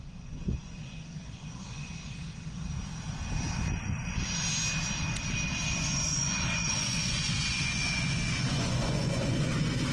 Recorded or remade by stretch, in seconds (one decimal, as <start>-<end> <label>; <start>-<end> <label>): 0.0-1.9 remade; 1.9-5.7 recorded; 5.7-9.9 remade